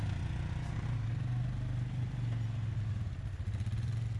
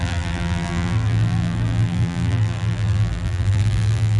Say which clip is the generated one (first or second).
second